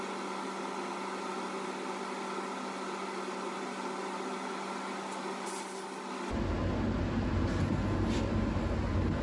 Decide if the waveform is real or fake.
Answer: real